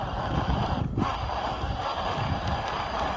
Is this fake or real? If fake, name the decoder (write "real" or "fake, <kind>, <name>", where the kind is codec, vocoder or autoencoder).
real